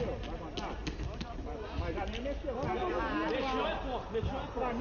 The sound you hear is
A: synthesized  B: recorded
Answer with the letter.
B